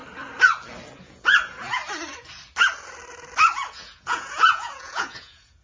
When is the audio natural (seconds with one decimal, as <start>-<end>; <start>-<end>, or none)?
0.0-1.0; 1.8-3.7

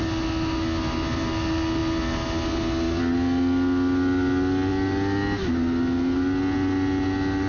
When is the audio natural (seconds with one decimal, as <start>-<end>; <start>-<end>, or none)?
0.0-7.5

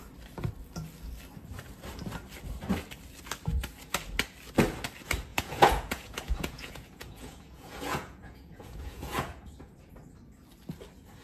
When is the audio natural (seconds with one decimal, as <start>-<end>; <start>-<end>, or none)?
0.0-5.3; 9.7-11.2

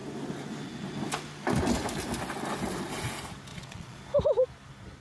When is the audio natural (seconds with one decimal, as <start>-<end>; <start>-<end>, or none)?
0.0-3.5; 4.0-5.0

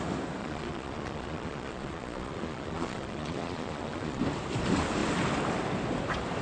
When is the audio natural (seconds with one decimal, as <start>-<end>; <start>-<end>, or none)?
0.0-0.4; 4.2-6.4